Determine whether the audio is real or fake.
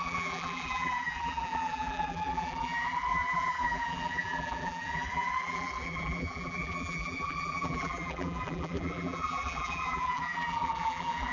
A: fake